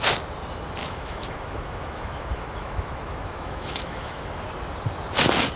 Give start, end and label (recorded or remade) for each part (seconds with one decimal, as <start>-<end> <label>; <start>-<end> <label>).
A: 0.0-0.8 recorded; 0.8-4.2 remade; 4.2-5.6 recorded